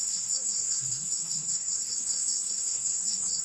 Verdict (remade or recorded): remade